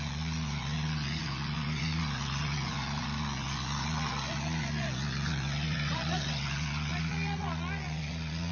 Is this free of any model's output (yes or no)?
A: no